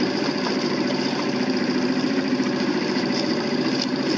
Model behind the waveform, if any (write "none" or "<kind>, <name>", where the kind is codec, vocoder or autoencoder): vocoder, BigVGAN v2